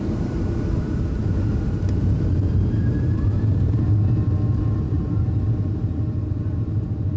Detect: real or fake fake